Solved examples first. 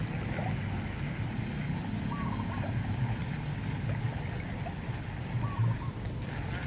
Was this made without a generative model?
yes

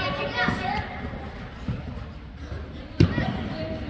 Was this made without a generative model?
yes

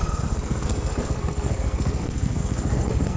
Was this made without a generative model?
no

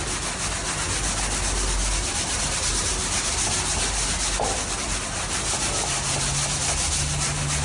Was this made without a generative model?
yes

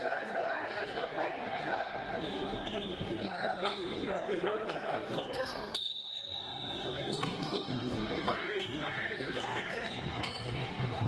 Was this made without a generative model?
no